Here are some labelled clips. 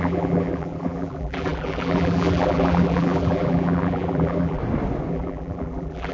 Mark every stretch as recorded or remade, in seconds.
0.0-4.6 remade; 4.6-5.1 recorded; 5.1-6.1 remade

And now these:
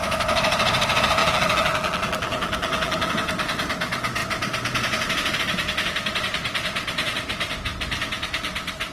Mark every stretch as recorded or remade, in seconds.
0.0-1.2 recorded; 1.2-3.1 remade; 3.1-8.9 recorded

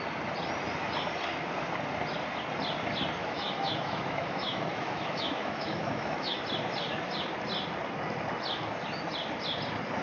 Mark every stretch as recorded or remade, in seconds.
0.0-3.2 recorded; 3.2-6.4 remade; 6.4-10.0 recorded

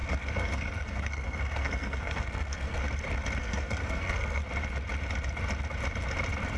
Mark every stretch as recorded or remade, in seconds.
0.0-2.8 remade; 2.8-3.4 recorded; 3.4-4.4 remade; 4.4-6.6 recorded

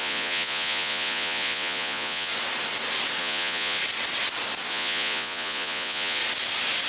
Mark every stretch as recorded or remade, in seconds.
0.0-2.3 remade; 2.3-3.2 recorded; 3.2-3.8 remade; 3.8-4.7 recorded; 4.7-6.2 remade; 6.2-6.9 recorded

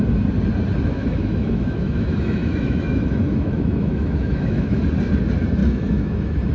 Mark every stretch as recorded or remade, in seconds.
0.0-0.9 recorded; 0.9-4.8 remade; 4.8-5.6 recorded; 5.6-6.5 remade